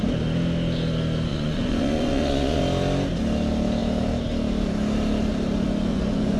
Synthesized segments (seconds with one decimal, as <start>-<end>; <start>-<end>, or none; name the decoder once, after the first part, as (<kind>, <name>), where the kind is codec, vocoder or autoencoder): 1.3-2.6 (vocoder, Vocos); 5.9-6.4